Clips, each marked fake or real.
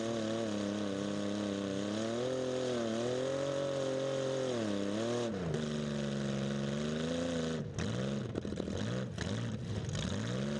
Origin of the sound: real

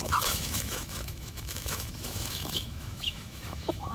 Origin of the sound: fake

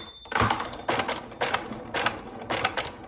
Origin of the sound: fake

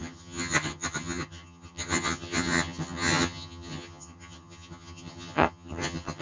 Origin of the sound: fake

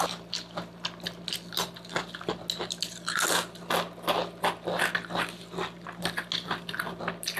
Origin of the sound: real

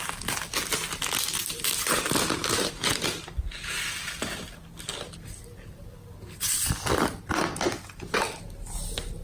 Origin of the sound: real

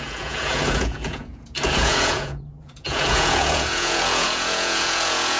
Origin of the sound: fake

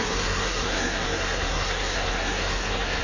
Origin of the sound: fake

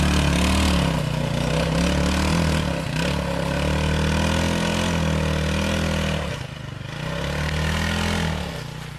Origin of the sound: real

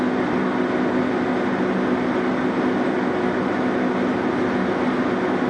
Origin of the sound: real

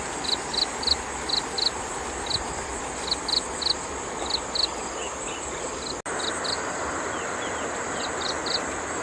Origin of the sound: real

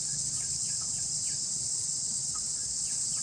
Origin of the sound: fake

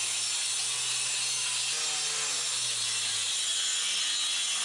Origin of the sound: real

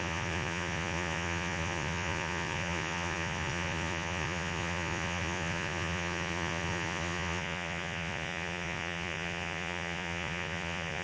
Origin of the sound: fake